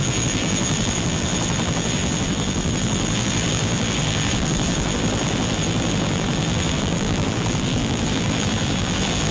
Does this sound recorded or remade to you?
remade